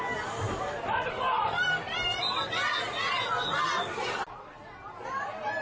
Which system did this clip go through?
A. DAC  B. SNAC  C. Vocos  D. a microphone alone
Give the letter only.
D